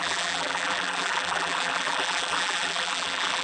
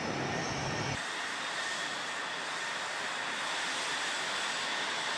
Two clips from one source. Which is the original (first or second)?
second